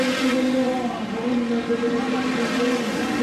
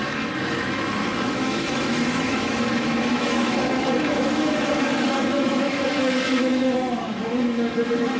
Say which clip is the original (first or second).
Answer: first